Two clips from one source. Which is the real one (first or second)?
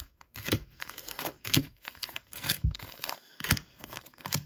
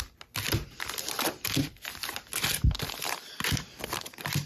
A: second